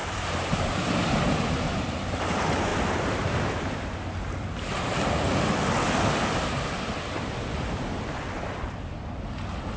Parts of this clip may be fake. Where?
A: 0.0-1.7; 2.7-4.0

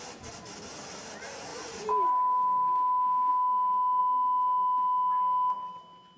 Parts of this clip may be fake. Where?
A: none

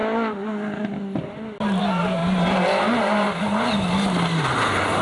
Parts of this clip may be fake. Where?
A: 2.2-3.6

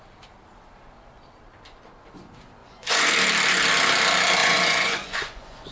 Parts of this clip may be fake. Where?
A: 2.6-3.1; 4.4-5.7

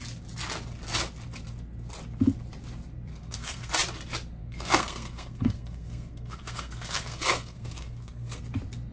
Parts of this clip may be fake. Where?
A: 3.1-3.7; 4.4-8.4

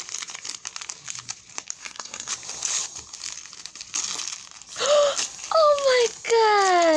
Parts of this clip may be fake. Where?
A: 1.8-2.3